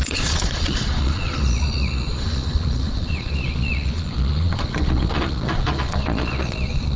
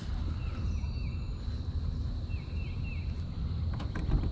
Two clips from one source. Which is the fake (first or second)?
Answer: first